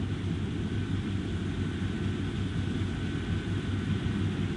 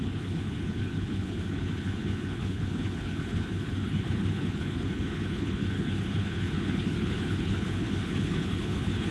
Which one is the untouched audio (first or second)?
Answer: first